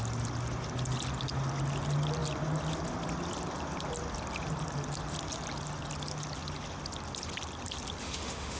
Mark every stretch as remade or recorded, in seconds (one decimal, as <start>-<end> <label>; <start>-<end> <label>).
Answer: 0.0-8.0 recorded; 8.0-8.6 remade